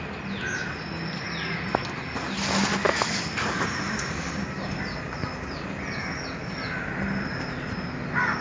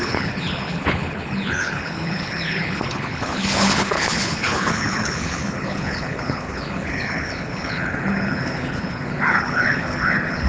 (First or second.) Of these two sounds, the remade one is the second